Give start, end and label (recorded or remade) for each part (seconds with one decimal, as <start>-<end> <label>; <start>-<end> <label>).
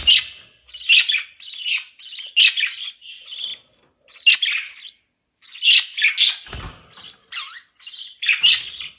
0.0-9.0 recorded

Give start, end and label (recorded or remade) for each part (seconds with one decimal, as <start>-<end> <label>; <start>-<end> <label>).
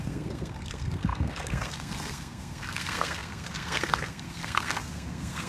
0.0-5.5 remade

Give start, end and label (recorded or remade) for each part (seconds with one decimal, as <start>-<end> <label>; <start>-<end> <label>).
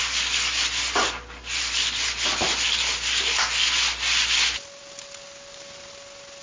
0.0-6.4 recorded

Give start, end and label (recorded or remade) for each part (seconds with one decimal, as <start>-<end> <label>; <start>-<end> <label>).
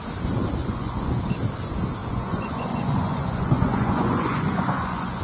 0.0-0.6 recorded; 0.6-1.2 remade; 1.2-2.0 recorded; 2.0-5.2 remade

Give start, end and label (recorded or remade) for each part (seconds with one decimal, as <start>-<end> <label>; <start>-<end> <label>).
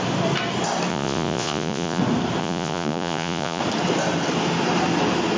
0.0-0.9 recorded; 0.9-2.0 remade; 2.0-2.4 recorded; 2.4-3.6 remade; 3.6-5.4 recorded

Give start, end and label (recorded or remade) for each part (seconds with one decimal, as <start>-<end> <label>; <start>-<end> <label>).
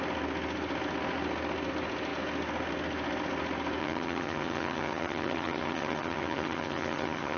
0.0-3.8 recorded; 3.8-7.4 remade